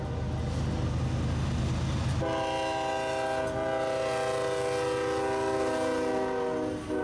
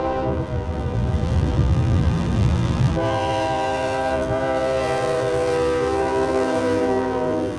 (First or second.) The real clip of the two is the first